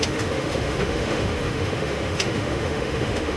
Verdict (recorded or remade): remade